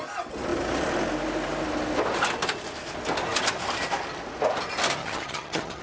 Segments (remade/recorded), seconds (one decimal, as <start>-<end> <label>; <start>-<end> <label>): 0.0-5.0 recorded; 5.0-5.8 remade